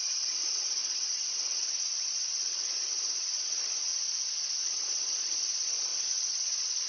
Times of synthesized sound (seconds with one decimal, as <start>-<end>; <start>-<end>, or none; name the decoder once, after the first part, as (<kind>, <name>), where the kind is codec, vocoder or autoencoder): 0.0-3.9 (vocoder, Vocos); 4.5-6.9